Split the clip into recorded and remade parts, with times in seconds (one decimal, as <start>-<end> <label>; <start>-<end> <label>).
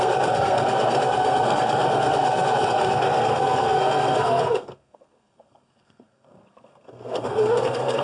0.0-8.0 remade